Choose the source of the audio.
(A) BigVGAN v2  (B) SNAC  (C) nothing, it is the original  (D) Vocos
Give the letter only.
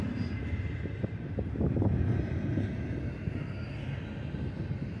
C